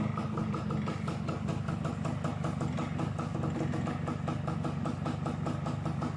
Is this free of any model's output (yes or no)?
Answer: yes